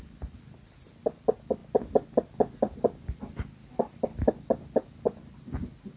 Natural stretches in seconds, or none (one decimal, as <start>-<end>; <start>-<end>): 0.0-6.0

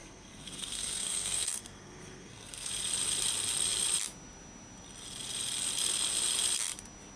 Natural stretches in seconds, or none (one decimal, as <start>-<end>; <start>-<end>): 2.7-7.2

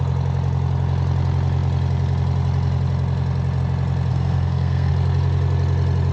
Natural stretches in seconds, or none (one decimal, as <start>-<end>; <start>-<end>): 0.0-4.1; 4.9-6.1

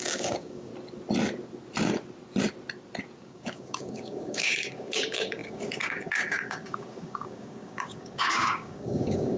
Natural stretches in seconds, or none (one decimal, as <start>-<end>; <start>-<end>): 0.7-3.2

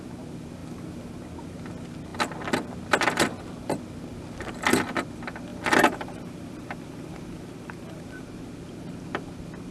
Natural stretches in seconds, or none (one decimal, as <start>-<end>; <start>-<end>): 0.0-0.6; 1.1-5.5; 8.2-9.7